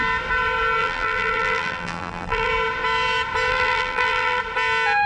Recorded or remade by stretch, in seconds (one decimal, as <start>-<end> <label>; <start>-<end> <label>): 0.0-0.8 recorded; 0.8-2.5 remade; 2.5-3.5 recorded; 3.5-4.4 remade; 4.4-5.1 recorded